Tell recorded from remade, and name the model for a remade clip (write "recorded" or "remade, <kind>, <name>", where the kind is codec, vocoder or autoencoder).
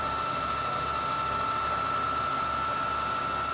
recorded